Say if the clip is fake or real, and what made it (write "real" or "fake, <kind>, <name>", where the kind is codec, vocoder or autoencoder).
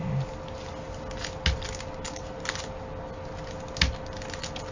real